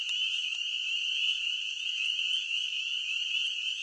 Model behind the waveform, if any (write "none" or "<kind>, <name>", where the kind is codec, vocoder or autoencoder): vocoder, BigVGAN v2